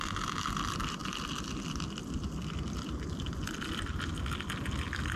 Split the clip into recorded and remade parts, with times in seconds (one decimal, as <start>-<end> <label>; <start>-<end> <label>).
0.0-5.2 recorded